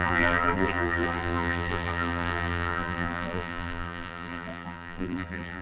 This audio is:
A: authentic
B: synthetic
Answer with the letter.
B